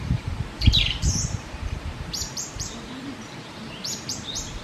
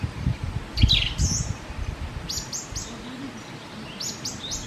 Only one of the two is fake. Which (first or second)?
first